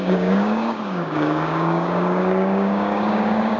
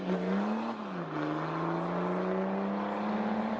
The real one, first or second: second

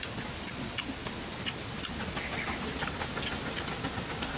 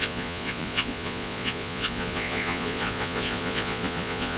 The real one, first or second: first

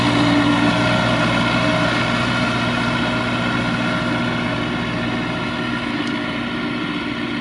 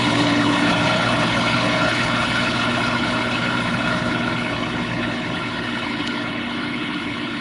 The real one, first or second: first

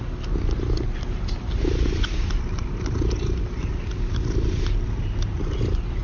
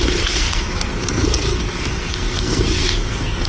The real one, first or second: first